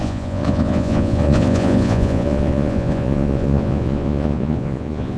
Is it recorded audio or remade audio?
remade